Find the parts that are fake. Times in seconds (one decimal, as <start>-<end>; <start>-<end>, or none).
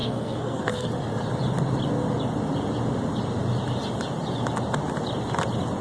0.0-0.9